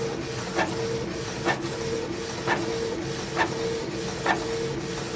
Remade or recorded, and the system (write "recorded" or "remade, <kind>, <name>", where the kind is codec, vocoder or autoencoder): recorded